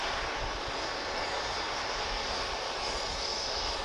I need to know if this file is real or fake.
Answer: real